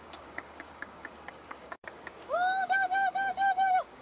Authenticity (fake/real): fake